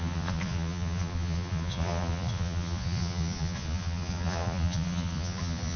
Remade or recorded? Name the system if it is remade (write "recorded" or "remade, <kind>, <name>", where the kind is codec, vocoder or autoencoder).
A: remade, vocoder, Vocos